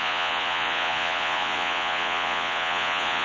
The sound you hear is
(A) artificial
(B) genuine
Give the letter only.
A